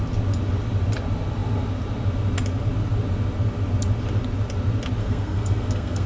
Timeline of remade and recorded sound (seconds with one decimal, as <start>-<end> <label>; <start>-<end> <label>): 0.0-5.0 recorded; 5.0-6.1 remade